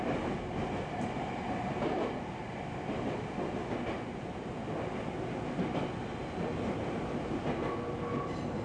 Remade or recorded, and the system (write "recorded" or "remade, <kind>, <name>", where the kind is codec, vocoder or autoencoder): recorded